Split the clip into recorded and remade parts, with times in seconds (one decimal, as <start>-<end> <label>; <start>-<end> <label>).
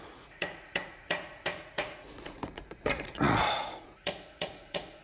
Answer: 0.0-5.0 remade